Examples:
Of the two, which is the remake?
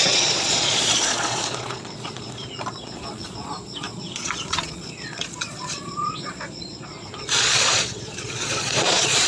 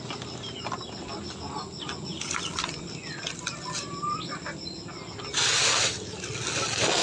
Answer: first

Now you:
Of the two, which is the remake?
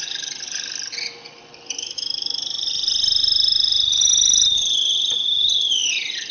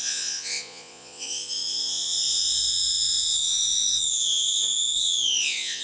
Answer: second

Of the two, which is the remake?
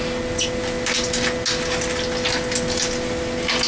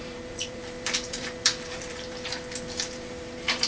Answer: second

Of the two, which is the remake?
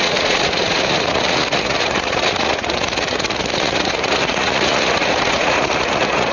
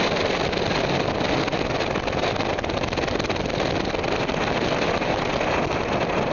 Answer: first